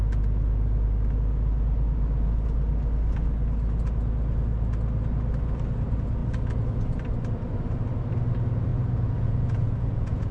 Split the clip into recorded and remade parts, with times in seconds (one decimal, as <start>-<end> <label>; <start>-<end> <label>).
0.0-8.7 recorded; 8.7-10.3 remade